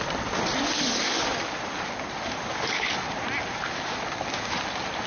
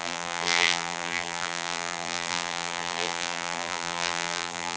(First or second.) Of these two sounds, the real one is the first